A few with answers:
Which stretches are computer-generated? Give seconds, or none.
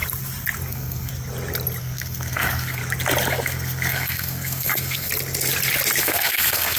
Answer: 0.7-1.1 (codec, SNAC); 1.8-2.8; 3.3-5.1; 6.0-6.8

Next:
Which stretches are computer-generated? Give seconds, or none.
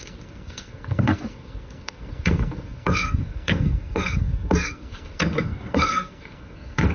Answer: 0.0-6.9 (codec, SNAC)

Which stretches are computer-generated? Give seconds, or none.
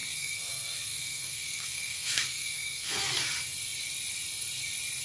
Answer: 0.0-3.0 (codec, SNAC)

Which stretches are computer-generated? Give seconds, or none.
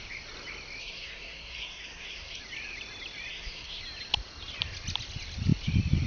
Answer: 0.8-2.4 (codec, SNAC); 3.3-3.8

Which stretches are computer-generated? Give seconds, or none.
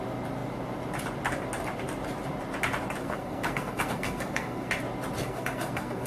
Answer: 3.0-4.7 (codec, SNAC); 5.2-6.1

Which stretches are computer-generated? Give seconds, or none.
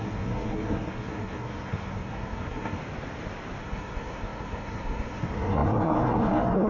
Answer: 0.0-2.8 (codec, SNAC); 3.6-6.7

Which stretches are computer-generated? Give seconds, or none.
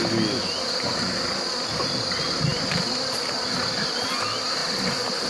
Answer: none